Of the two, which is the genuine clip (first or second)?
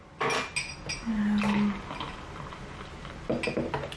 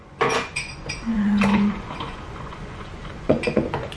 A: first